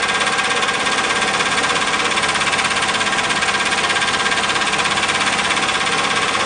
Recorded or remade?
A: recorded